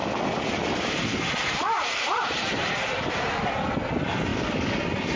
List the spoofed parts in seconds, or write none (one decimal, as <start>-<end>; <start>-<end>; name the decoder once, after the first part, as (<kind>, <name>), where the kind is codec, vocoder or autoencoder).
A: none